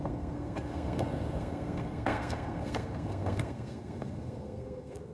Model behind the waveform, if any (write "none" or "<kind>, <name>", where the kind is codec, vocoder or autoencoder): codec, SNAC